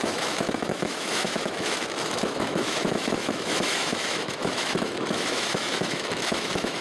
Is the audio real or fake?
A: fake